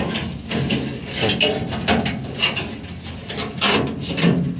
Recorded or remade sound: recorded